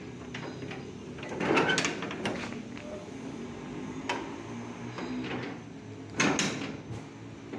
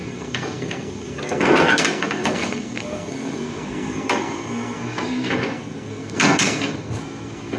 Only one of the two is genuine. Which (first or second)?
first